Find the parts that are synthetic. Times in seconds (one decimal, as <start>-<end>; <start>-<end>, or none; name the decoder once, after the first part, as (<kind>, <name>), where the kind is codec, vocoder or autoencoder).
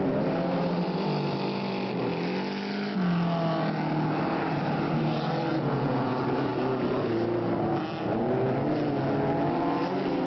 5.5-6.1 (vocoder, Vocos)